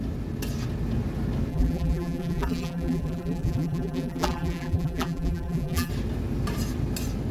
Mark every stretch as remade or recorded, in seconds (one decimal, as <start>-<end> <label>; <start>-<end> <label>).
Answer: 0.0-1.5 recorded; 1.5-5.9 remade; 5.9-7.3 recorded